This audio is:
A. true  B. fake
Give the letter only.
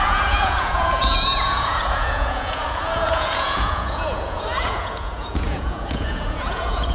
B